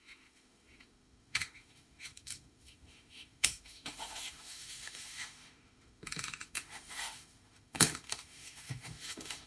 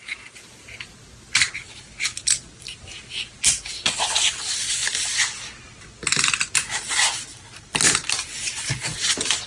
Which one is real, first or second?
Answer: second